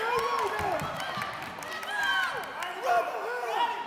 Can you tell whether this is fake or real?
real